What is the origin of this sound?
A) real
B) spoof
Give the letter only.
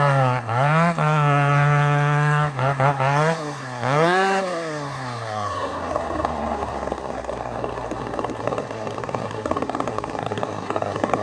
B